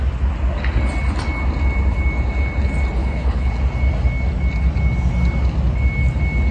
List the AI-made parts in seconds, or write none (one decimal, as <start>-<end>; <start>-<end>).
3.0-3.5